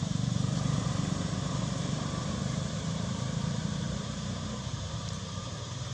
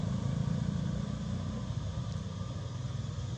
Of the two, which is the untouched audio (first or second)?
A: second